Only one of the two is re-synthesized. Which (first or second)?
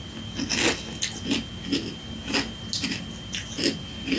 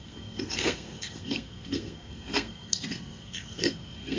second